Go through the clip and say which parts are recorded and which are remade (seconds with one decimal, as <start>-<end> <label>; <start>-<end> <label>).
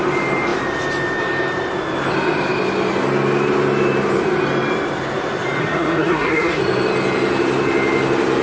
0.0-5.6 recorded; 5.6-6.6 remade; 6.6-8.4 recorded